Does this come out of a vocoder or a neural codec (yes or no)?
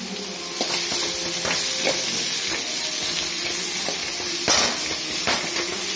no